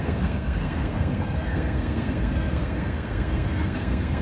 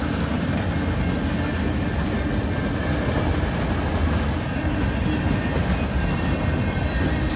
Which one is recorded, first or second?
second